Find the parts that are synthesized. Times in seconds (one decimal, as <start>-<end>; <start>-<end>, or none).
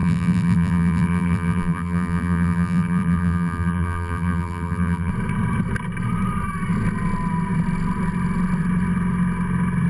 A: 0.0-5.1